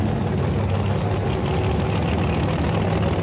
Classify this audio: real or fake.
real